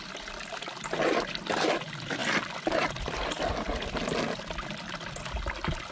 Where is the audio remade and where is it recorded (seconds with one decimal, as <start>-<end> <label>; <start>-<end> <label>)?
0.0-5.9 recorded